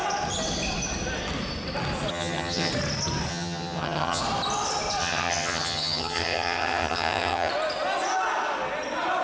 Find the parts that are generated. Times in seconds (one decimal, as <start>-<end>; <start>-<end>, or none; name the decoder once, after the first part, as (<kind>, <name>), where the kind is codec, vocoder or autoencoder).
2.1-2.7 (vocoder, HiFi-GAN); 3.3-4.2; 5.0-7.5